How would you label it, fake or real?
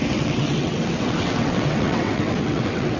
fake